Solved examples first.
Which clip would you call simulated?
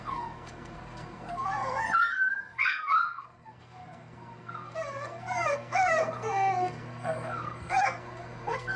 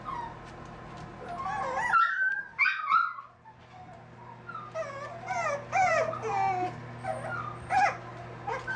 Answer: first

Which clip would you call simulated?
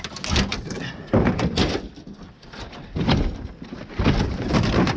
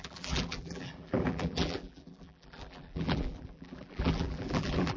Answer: second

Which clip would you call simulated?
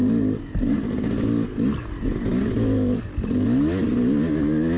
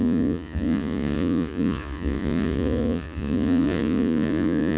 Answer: second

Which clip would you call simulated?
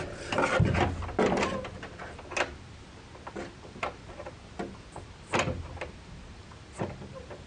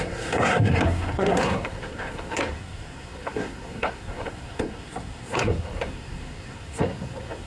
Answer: second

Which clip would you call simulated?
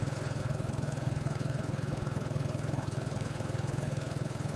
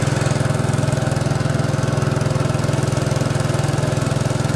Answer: first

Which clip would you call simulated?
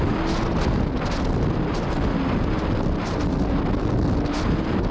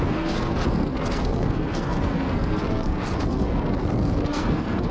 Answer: second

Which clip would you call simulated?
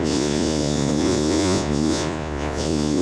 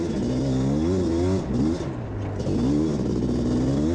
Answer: first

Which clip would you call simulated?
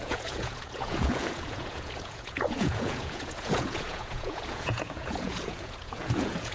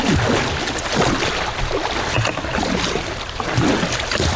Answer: first